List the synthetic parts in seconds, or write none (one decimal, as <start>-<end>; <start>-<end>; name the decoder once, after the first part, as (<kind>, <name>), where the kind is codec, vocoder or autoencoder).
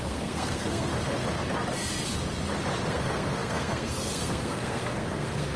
0.0-0.9 (codec, SNAC); 2.9-5.6